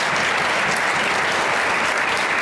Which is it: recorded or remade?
recorded